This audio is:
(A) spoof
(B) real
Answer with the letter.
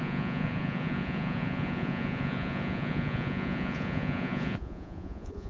A